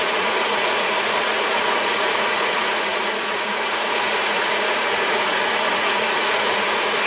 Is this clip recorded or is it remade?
remade